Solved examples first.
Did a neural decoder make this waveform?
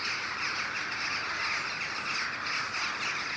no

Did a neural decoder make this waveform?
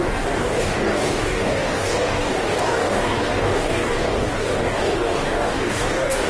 yes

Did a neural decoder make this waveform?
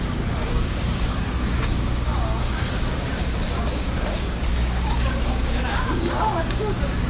yes